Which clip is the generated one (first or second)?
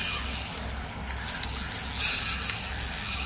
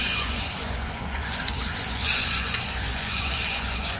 second